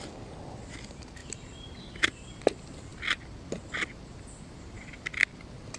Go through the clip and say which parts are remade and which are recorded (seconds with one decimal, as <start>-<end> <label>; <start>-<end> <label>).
0.0-5.8 recorded